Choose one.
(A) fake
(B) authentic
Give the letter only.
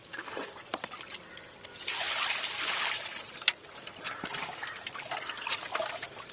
B